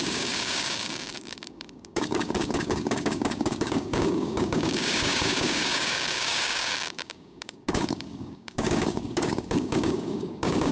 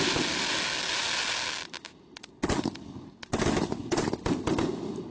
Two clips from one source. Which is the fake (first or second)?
first